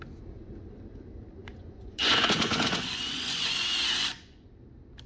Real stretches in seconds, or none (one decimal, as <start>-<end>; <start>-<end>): 0.0-1.4; 4.5-5.1

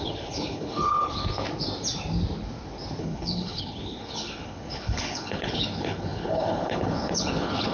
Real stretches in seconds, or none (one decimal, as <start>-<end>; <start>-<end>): 1.2-3.0

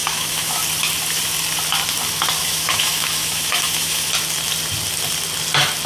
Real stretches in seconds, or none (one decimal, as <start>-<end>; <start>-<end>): 0.6-2.4; 4.1-5.9

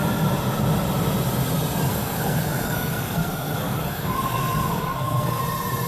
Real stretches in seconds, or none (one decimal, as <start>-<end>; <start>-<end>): 0.0-1.9; 5.4-5.9

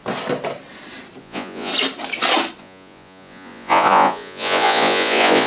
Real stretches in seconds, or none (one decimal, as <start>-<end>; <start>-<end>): 0.0-1.2; 1.7-2.6

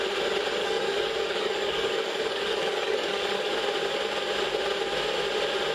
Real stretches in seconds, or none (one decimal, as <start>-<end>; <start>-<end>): 0.0-0.6; 3.5-5.7